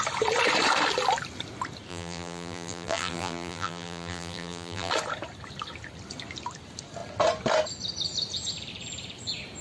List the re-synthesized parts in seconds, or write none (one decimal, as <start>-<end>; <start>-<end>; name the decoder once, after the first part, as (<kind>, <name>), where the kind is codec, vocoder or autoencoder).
1.9-4.9 (vocoder, BigVGAN v2)